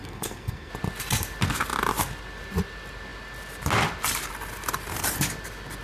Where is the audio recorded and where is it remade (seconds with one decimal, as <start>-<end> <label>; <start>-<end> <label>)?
0.0-0.7 remade; 0.7-5.8 recorded